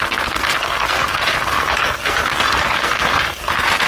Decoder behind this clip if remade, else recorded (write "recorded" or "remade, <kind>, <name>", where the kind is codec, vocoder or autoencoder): remade, codec, SNAC